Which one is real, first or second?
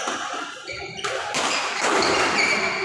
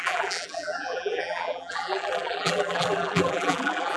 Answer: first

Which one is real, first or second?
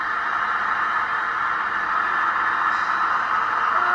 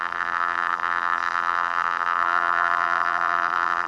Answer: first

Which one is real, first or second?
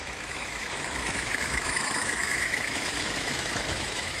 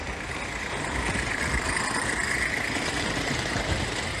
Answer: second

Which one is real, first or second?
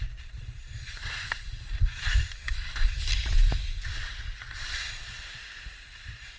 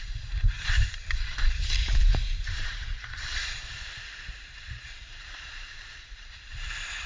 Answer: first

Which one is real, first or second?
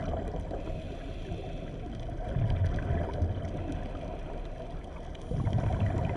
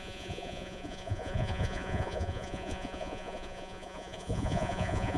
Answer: first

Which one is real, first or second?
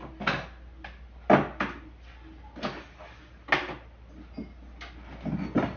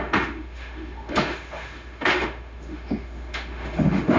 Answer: first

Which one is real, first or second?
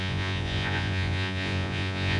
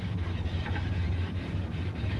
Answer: second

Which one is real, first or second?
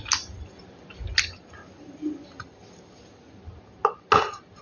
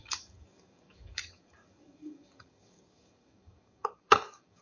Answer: first